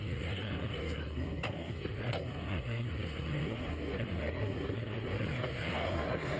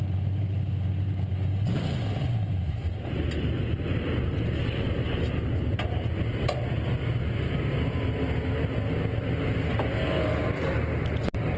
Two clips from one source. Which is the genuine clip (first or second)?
second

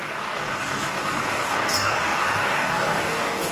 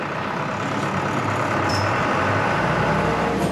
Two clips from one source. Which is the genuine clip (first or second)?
second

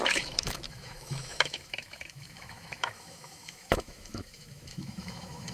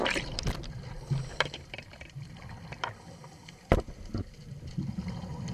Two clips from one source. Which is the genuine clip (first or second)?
second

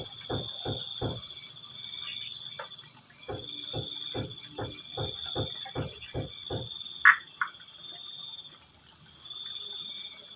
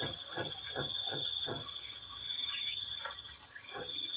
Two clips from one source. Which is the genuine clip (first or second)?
first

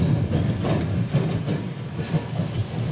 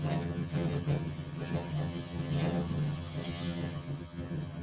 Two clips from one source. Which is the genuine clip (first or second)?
first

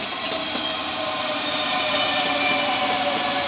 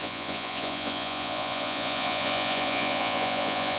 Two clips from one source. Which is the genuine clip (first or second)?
first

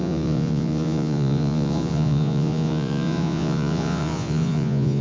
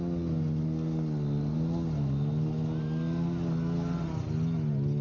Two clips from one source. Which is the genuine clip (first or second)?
second